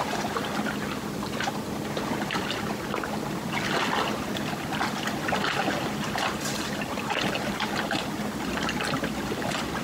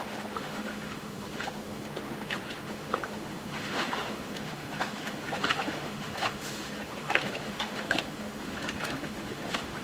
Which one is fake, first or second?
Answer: second